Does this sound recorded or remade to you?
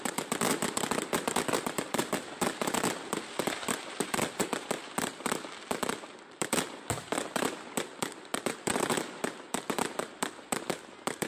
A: remade